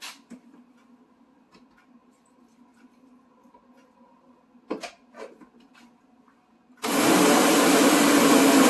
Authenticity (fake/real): real